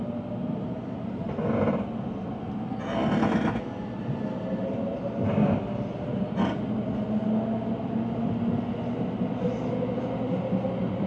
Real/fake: real